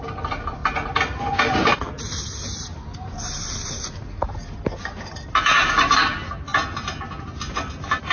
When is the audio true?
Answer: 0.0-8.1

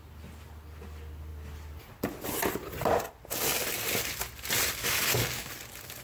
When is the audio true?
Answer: 0.0-4.8; 5.5-6.0